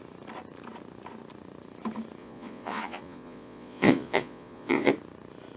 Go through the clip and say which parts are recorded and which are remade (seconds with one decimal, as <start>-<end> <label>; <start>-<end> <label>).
0.0-2.2 recorded; 2.2-4.9 remade; 4.9-5.6 recorded